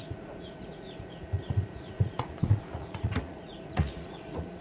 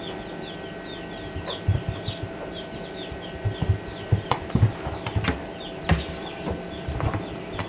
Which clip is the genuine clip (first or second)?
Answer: second